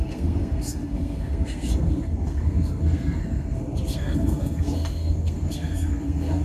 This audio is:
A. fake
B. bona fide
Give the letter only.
A